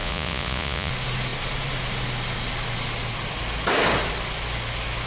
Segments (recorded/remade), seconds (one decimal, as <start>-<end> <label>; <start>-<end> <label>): 0.0-0.9 remade; 0.9-5.1 recorded